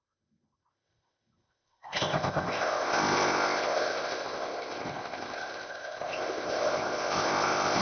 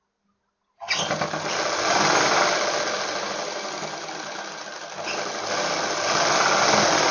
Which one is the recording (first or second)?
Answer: second